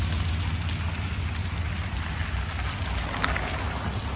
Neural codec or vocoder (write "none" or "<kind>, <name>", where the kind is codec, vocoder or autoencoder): none